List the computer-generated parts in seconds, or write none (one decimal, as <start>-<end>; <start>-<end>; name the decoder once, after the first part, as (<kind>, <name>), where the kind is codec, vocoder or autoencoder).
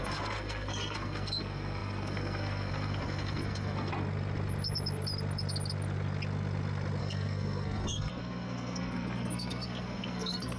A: 0.0-3.9 (codec, SNAC); 7.0-10.6